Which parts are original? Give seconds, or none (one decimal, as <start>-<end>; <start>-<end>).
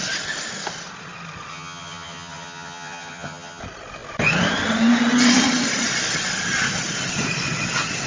0.0-1.5; 3.6-8.1